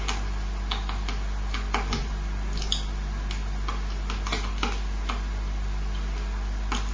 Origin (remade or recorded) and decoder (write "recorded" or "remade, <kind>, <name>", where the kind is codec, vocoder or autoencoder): recorded